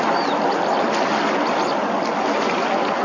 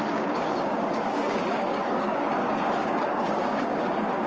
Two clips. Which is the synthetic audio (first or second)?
second